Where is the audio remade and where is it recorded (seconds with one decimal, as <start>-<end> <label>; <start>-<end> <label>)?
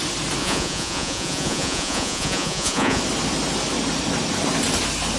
0.0-0.4 recorded; 0.4-3.0 remade; 3.0-5.2 recorded